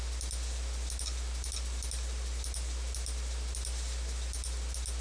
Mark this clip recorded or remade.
recorded